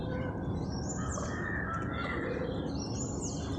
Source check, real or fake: real